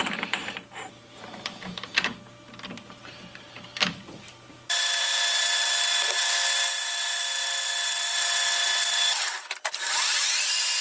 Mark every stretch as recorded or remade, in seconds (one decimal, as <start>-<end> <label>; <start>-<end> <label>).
0.0-1.9 remade; 1.9-3.9 recorded; 3.9-5.7 remade; 5.7-9.5 recorded; 9.5-10.8 remade